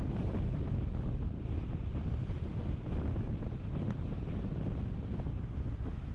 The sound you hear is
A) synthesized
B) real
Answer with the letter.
B